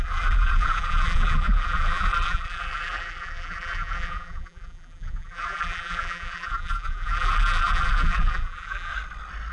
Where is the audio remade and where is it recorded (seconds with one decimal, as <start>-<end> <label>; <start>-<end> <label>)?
0.0-8.9 remade; 8.9-9.5 recorded